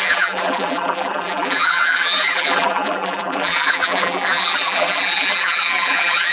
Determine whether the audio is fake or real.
fake